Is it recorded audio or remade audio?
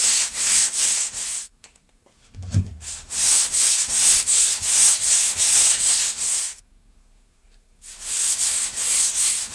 remade